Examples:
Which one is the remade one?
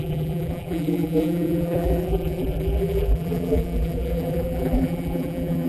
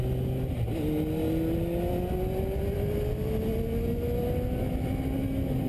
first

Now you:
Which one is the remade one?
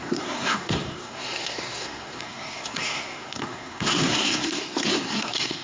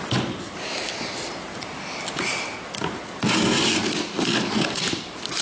first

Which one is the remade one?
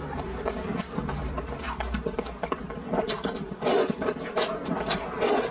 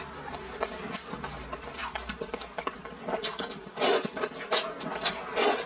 first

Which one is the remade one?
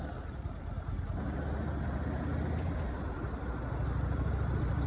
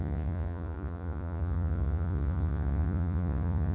second